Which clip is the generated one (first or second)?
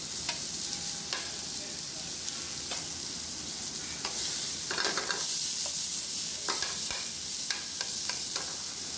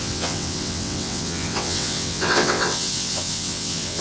second